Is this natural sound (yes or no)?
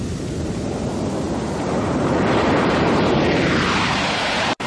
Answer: no